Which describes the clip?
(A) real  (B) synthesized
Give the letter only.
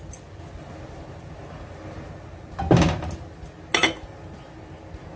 A